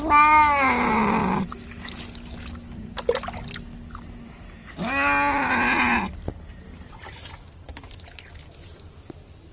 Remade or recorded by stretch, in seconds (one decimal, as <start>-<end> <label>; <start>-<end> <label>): 0.0-9.5 recorded